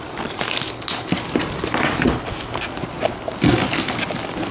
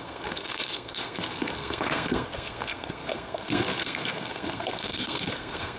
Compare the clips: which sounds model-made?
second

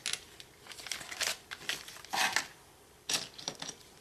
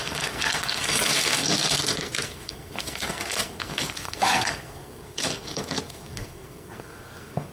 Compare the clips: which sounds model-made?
second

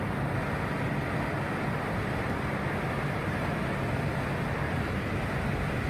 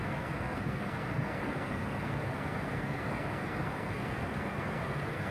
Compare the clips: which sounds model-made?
second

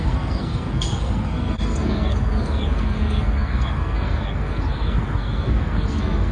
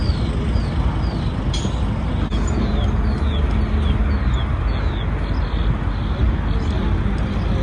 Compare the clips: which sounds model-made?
first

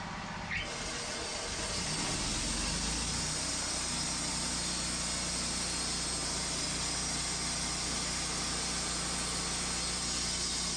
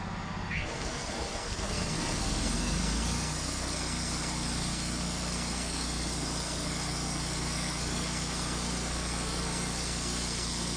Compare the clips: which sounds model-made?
second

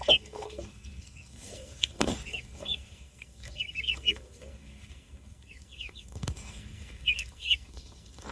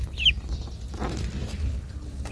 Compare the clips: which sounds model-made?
first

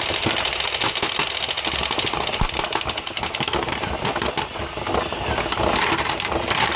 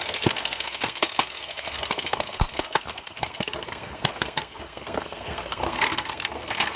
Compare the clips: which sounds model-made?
second